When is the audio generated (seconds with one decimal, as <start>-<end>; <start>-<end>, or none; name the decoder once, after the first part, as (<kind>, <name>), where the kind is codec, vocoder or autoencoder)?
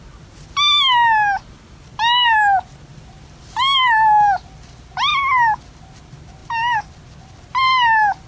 none